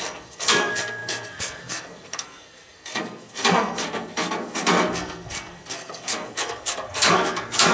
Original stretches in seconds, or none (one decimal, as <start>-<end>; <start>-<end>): none